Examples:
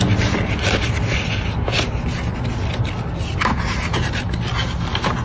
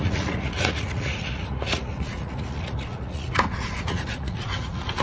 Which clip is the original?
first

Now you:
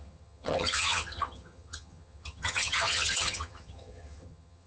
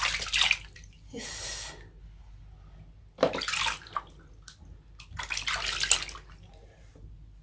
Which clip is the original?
second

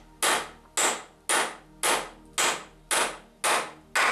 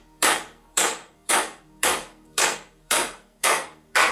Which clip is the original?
first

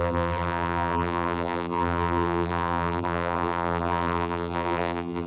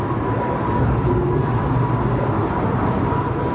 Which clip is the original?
second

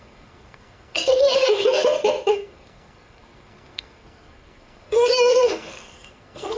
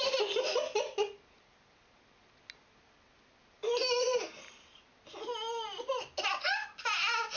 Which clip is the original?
second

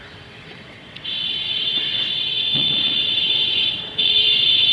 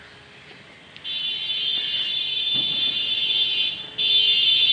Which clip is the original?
second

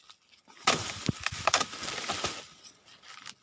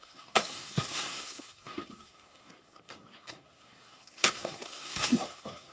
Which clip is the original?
first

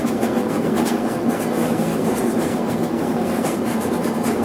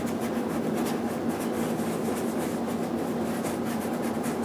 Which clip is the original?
second